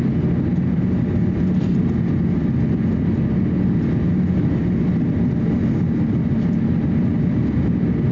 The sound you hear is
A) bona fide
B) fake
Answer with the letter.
A